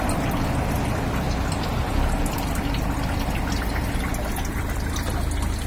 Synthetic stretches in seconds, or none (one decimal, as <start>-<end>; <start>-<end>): 1.7-5.1